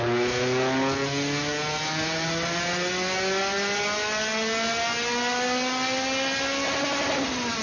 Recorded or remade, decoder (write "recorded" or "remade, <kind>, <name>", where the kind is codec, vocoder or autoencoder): recorded